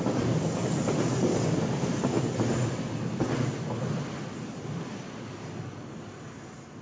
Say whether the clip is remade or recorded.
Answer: recorded